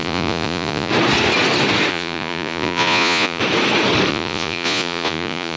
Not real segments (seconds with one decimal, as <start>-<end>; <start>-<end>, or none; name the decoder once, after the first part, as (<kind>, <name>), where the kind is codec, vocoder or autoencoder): 0.0-0.9 (vocoder, Vocos); 1.9-3.4; 4.1-5.6